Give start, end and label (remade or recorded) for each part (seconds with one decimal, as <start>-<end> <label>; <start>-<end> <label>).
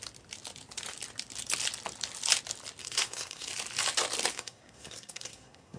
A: 0.0-2.8 recorded; 2.8-3.5 remade; 3.5-4.3 recorded; 4.3-5.8 remade